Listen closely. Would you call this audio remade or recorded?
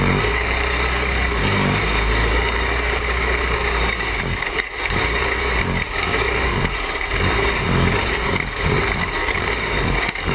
remade